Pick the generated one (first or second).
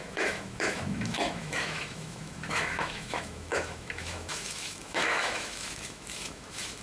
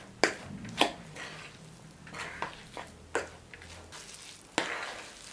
first